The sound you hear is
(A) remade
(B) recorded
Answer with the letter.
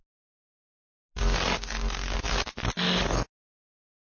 B